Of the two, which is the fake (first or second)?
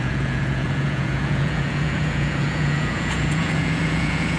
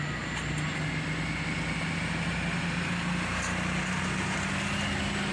first